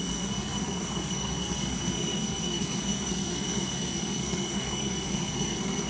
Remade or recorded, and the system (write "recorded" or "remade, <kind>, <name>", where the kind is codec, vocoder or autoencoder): remade, codec, SNAC